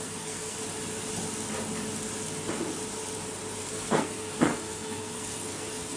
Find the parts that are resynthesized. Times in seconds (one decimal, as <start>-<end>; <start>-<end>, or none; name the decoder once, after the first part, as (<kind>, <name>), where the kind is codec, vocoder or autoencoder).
0.0-0.6 (codec, SNAC); 3.6-6.0